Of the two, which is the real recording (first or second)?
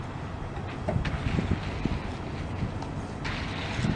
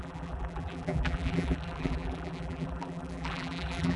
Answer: first